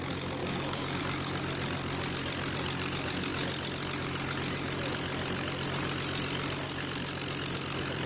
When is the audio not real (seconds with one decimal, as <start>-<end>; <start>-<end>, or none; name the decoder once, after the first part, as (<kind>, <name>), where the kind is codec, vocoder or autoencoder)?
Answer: 0.4-1.0 (codec, DAC)